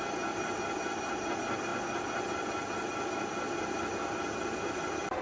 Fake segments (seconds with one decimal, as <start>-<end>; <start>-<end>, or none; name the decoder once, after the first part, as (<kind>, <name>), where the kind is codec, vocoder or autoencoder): none